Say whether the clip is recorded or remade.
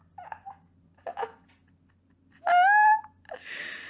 recorded